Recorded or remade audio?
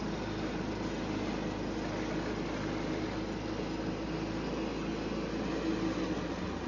recorded